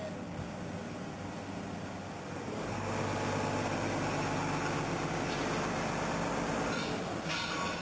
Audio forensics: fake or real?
real